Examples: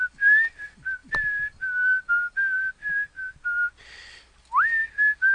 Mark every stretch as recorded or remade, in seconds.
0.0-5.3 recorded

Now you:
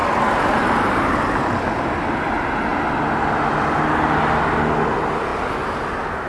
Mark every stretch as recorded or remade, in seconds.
0.0-6.3 recorded

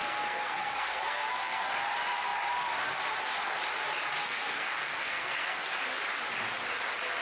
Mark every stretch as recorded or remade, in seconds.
0.0-1.7 remade; 1.7-4.2 recorded; 4.2-5.8 remade; 5.8-7.2 recorded

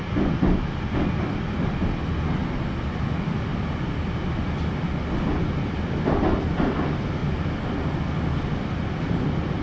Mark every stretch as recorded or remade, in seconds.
0.0-9.6 recorded

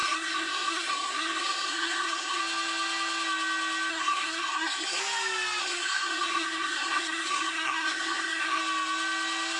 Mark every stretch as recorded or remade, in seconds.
0.0-2.4 remade; 2.4-3.9 recorded; 3.9-5.0 remade; 5.0-5.6 recorded; 5.6-8.6 remade; 8.6-9.6 recorded

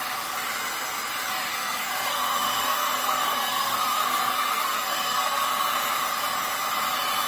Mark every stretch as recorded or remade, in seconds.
0.0-1.5 recorded; 1.5-5.7 remade; 5.7-7.3 recorded

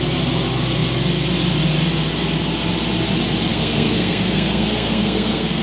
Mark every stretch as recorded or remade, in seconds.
0.0-3.5 recorded; 3.5-5.6 remade

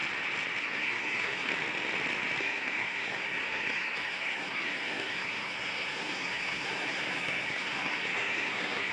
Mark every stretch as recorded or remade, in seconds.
0.0-0.6 recorded; 0.6-1.5 remade; 1.5-2.4 recorded; 2.4-8.9 remade